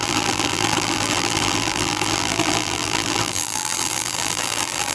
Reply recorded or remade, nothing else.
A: remade